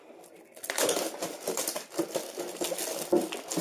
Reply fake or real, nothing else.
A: real